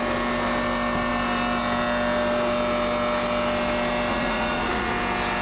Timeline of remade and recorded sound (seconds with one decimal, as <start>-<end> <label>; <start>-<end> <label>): 0.0-4.1 recorded; 4.1-4.9 remade; 4.9-5.4 recorded